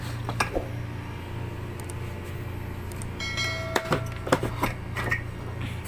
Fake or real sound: real